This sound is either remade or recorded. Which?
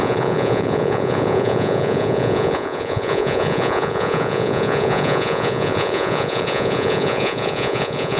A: remade